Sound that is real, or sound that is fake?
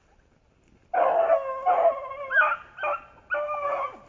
real